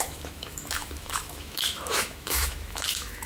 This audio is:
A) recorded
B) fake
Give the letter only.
B